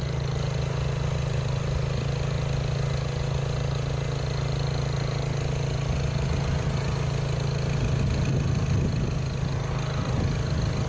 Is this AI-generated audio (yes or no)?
no